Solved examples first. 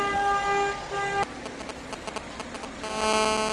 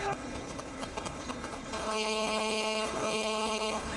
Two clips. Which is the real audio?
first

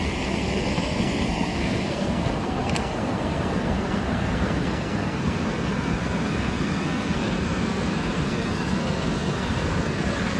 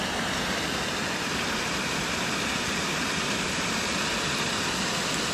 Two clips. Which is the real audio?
second